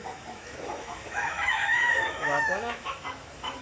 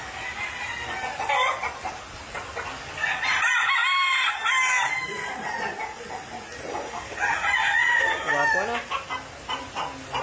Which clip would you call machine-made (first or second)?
first